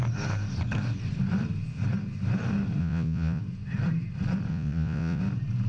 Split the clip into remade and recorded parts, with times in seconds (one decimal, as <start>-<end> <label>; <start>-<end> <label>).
0.0-2.8 recorded; 2.8-3.4 remade; 3.4-4.5 recorded; 4.5-5.2 remade; 5.2-5.7 recorded